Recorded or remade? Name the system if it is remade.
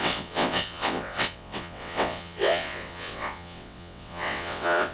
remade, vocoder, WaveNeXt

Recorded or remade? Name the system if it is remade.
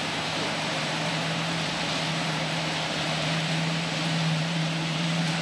remade, vocoder, BigVGAN v2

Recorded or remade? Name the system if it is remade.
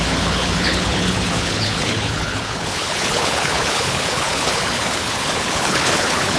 remade, codec, HILCodec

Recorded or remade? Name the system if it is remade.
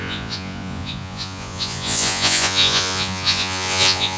remade, vocoder, Vocos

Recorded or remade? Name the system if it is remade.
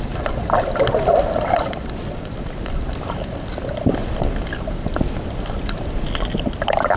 remade, vocoder, BigVGAN v2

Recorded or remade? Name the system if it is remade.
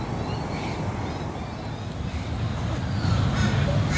recorded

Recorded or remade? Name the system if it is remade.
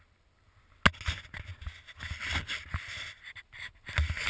recorded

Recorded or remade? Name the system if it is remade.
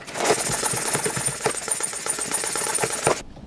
remade, vocoder, Vocos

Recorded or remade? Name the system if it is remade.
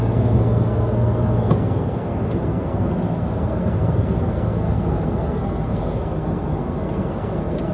remade, codec, SNAC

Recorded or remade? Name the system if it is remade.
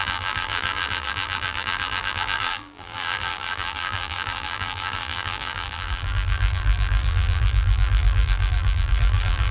remade, vocoder, BigVGAN v2